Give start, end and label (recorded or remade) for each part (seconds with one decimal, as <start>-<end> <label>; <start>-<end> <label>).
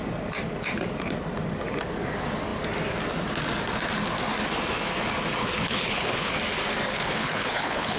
0.0-5.4 recorded; 5.4-6.3 remade; 6.3-7.0 recorded; 7.0-8.0 remade